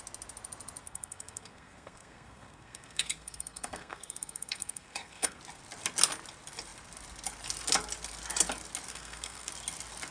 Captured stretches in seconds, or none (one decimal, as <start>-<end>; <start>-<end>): 0.0-0.8; 5.4-8.9; 9.5-10.1

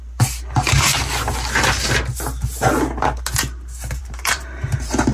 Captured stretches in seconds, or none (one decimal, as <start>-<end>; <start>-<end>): 0.9-4.0

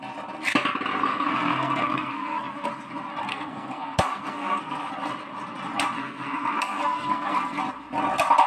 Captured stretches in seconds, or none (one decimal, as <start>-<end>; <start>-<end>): 0.0-1.1; 2.7-3.3; 4.9-6.0; 7.6-8.5

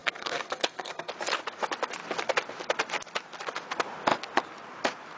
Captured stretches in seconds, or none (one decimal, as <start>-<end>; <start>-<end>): 1.1-5.2

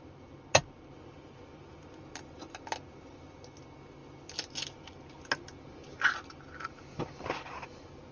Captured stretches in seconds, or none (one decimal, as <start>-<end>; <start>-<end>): 0.0-8.1

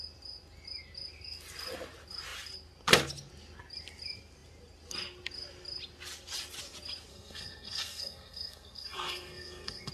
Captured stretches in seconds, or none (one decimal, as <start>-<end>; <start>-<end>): 0.0-7.1

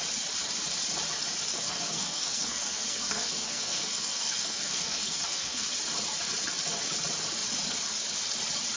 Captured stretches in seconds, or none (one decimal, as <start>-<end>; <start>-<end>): 0.0-1.5; 5.7-8.8